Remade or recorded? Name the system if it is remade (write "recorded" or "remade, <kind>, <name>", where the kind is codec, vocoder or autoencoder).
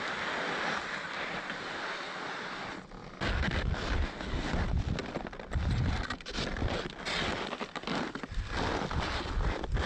recorded